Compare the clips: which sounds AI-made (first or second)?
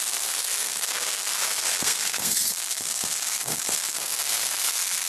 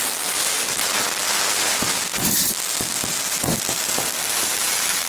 first